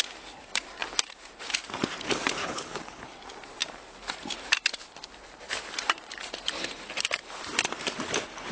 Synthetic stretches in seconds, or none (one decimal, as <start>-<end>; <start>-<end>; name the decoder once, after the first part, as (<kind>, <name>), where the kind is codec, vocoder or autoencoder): 2.4-3.0 (codec, HILCodec)